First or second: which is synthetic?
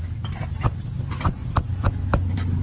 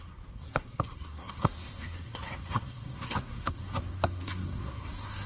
second